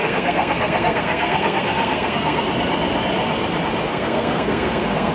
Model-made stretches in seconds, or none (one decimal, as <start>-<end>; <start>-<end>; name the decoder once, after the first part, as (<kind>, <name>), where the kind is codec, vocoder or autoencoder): 0.0-2.4 (codec, SNAC); 3.9-5.1